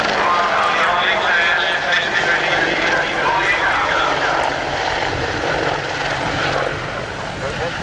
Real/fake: real